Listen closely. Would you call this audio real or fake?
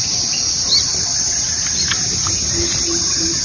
real